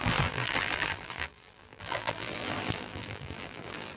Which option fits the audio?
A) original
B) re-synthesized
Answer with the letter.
B